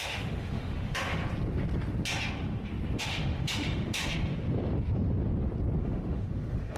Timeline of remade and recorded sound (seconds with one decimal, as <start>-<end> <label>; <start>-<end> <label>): 0.0-1.2 remade; 1.2-3.0 recorded; 3.0-4.0 remade; 4.0-5.8 recorded; 5.8-6.8 remade